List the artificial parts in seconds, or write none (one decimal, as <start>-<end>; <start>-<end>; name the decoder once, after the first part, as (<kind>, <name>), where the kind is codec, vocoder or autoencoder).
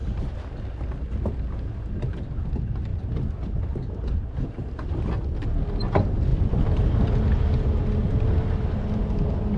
none